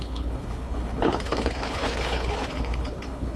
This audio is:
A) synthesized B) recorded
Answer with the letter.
A